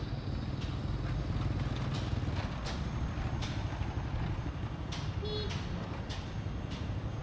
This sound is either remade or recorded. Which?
recorded